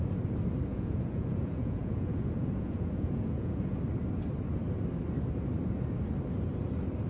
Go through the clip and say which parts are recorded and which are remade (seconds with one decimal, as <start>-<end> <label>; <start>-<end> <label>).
0.0-0.7 recorded; 0.7-3.8 remade; 3.8-7.1 recorded